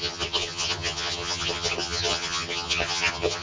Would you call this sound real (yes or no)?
no